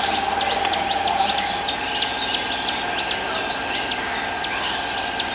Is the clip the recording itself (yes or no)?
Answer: yes